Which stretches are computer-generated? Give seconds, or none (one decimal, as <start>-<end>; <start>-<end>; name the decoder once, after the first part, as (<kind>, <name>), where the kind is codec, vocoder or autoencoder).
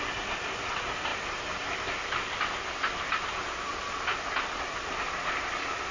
none